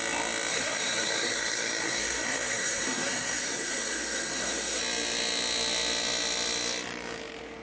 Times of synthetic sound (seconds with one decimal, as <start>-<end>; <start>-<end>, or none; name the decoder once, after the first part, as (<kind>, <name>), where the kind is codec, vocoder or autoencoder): 0.5-4.8 (codec, SNAC)